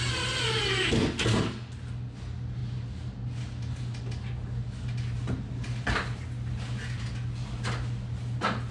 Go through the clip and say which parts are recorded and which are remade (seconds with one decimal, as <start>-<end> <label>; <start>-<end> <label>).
0.0-8.7 recorded